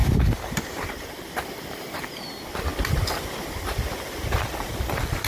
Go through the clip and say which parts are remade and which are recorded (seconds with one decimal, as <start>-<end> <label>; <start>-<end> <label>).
0.0-5.3 remade